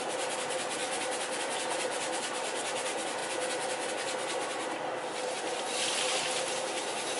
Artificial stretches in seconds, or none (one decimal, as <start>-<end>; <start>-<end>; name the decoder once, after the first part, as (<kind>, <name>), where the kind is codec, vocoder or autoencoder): 5.7-6.2 (vocoder, BigVGAN v2)